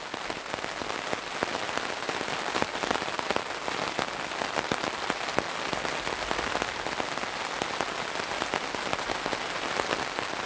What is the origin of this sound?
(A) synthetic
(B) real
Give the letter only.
B